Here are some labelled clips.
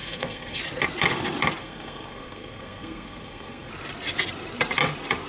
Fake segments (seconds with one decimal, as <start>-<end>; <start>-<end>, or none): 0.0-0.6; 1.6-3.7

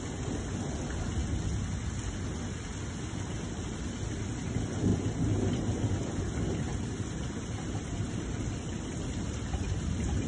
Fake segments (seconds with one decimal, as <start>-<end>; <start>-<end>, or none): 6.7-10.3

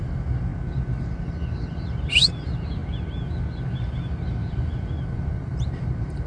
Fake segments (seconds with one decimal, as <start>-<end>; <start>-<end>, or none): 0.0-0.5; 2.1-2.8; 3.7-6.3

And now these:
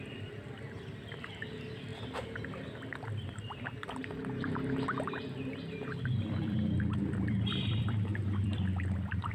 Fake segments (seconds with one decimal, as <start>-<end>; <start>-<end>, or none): 0.0-9.3